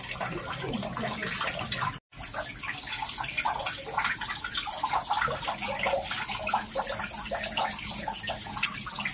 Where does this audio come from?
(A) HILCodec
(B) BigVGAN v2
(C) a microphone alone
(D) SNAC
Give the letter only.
C